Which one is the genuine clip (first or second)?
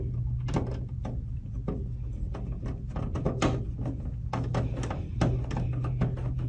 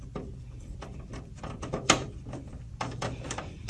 first